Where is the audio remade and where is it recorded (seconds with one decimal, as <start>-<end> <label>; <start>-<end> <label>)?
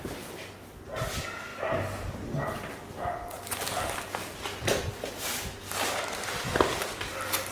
0.0-7.5 recorded